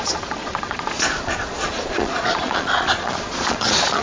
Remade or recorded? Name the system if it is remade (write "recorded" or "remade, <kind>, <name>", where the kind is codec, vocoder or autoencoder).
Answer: remade, vocoder, Vocos